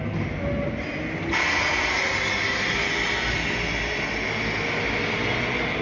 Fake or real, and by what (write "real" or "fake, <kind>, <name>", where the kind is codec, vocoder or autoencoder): real